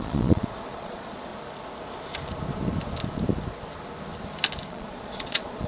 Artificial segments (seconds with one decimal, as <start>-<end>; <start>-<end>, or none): 0.0-1.3; 4.7-5.7